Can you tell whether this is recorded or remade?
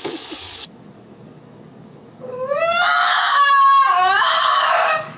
remade